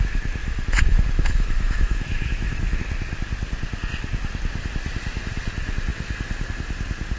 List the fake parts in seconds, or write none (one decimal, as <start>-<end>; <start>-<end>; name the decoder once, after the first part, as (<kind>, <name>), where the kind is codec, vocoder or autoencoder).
0.4-2.8 (autoencoder, DAC-VAE)

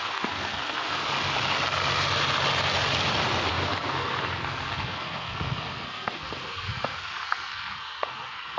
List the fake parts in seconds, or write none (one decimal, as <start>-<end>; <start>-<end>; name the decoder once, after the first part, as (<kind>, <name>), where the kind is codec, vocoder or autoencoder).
0.0-1.0 (codec, SNAC); 3.5-8.6

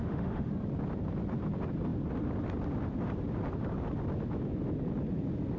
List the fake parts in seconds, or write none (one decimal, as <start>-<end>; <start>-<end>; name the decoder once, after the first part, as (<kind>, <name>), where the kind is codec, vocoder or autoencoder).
0.0-0.5 (autoencoder, DAC-VAE)

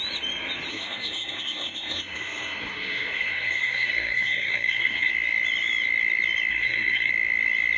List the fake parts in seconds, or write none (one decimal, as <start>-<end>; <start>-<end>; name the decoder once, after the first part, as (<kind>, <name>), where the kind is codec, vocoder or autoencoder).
0.7-5.1 (codec, SNAC); 6.5-7.1

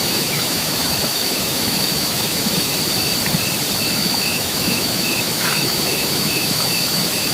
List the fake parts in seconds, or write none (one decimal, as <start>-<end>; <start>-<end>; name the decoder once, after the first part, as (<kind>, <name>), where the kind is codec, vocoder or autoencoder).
0.0-2.7 (autoencoder, DAC-VAE); 3.9-7.3

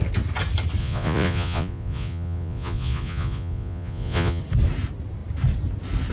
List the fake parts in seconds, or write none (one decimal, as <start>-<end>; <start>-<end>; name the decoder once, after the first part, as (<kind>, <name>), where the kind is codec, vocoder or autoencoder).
0.8-4.4 (vocoder, Vocos)

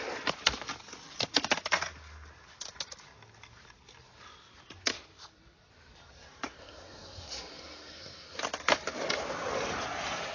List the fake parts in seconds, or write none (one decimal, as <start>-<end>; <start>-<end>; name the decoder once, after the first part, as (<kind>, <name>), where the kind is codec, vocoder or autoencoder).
6.6-8.4 (codec, SNAC)

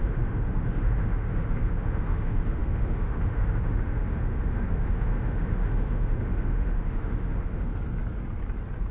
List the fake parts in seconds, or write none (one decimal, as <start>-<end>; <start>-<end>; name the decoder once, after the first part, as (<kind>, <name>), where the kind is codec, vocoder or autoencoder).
0.0-7.7 (autoencoder, DAC-VAE)